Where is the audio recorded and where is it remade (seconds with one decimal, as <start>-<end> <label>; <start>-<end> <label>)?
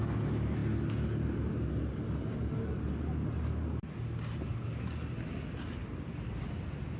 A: 0.0-7.0 recorded